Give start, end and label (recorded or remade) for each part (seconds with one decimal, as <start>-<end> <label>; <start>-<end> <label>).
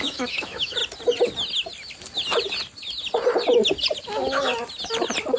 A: 0.0-0.8 remade; 0.8-4.0 recorded; 4.0-4.5 remade; 4.5-5.4 recorded